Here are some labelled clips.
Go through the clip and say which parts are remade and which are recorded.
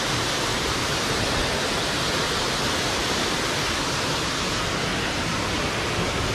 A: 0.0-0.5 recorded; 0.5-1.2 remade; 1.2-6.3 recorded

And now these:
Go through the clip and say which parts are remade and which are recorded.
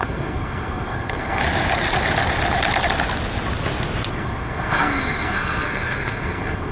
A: 0.0-1.4 remade; 1.4-4.1 recorded; 4.1-6.7 remade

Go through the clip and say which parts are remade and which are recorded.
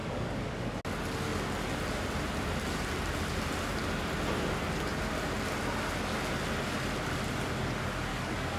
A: 0.0-0.8 remade; 0.8-8.1 recorded; 8.1-8.6 remade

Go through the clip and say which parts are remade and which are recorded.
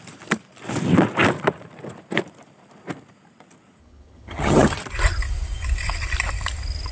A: 0.0-3.8 recorded; 3.8-4.8 remade; 4.8-6.9 recorded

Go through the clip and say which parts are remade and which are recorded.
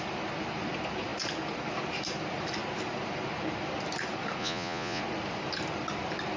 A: 0.0-4.4 recorded; 4.4-5.0 remade; 5.0-6.4 recorded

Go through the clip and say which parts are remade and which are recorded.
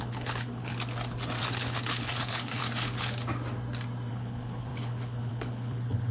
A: 0.0-0.7 remade; 0.7-1.4 recorded; 1.4-2.6 remade; 2.6-4.1 recorded; 4.1-6.1 remade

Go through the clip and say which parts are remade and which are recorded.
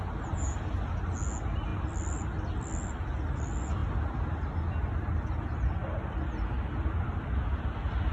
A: 0.0-8.1 recorded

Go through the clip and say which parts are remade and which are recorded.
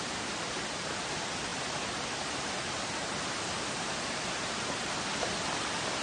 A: 0.0-1.5 recorded; 1.5-5.0 remade; 5.0-6.0 recorded